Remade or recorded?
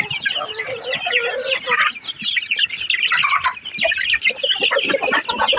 recorded